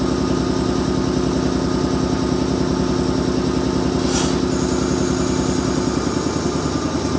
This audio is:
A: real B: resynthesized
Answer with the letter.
A